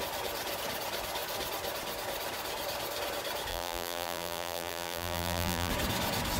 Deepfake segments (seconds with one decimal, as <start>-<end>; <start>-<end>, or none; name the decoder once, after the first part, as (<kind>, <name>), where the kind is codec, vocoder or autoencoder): 3.5-5.7 (vocoder, BigVGAN v2)